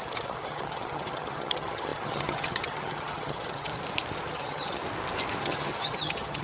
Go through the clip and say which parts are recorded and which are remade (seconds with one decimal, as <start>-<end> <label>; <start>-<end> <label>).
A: 0.0-3.7 remade; 3.7-4.3 recorded; 4.3-4.8 remade; 4.8-5.4 recorded; 5.4-6.4 remade